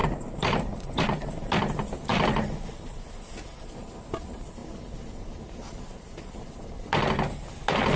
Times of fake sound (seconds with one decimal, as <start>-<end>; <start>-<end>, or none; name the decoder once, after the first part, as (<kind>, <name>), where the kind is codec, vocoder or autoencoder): 0.0-1.3 (vocoder, BigVGAN v2); 2.1-3.0